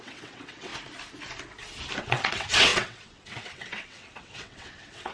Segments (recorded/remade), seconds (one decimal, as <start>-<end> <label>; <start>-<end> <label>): 0.0-0.7 remade; 0.7-2.0 recorded; 2.0-5.1 remade